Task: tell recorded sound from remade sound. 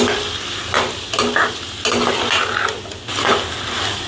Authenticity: recorded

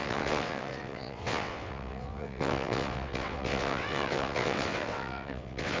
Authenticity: remade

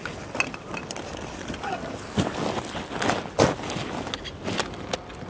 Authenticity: recorded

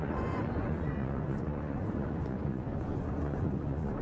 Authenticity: remade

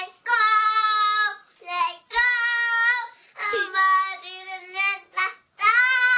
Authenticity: recorded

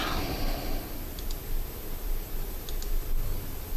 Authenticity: recorded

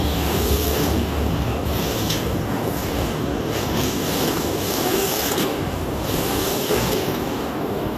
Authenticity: remade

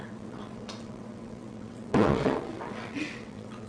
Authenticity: remade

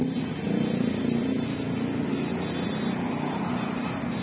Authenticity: recorded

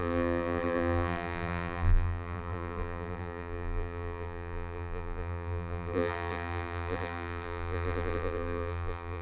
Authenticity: remade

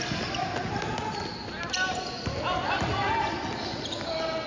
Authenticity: recorded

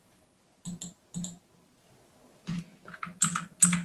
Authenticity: recorded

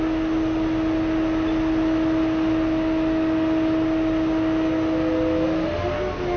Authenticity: recorded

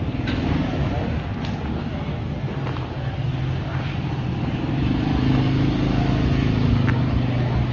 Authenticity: recorded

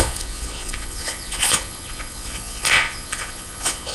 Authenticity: remade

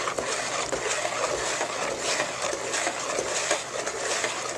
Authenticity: recorded